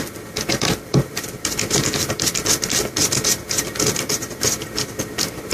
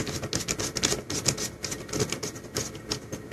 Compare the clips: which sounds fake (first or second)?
first